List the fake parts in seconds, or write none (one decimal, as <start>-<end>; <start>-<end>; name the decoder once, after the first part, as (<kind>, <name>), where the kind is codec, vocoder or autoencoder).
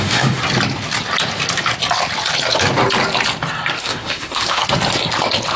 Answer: 0.0-0.4 (autoencoder, DAC-VAE); 3.8-4.6